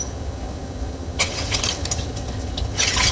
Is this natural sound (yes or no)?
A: no